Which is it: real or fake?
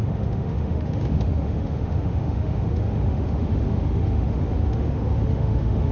fake